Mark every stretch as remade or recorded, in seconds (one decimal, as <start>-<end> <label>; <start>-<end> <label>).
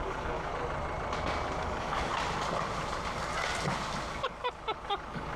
0.0-0.5 remade; 0.5-1.6 recorded; 1.6-2.1 remade; 2.1-4.1 recorded; 4.1-5.4 remade